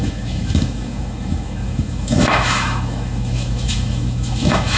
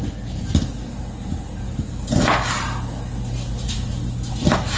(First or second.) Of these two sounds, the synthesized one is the first